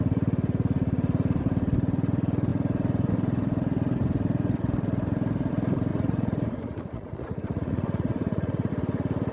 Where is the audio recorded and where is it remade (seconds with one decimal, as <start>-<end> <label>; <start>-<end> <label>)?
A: 0.0-5.9 recorded; 5.9-8.7 remade; 8.7-9.3 recorded